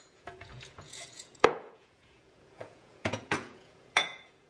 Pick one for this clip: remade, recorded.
remade